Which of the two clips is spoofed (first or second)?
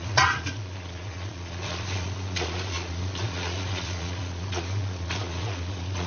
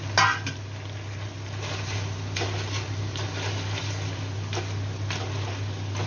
first